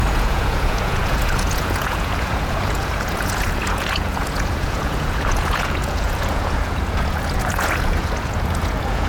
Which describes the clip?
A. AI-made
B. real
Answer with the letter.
A